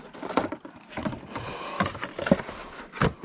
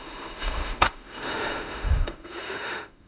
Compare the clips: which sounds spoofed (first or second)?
second